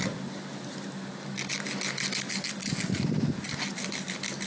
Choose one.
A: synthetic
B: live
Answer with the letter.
B